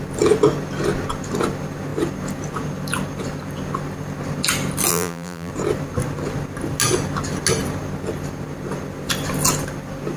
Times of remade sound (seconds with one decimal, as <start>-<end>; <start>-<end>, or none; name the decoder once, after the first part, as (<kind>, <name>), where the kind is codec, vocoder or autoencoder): 4.9-5.5 (vocoder, BigVGAN v2)